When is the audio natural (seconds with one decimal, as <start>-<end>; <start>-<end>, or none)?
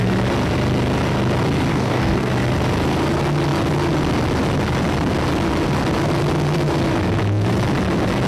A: 0.0-1.7; 2.3-8.3